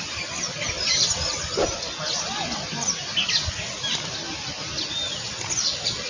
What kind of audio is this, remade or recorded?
recorded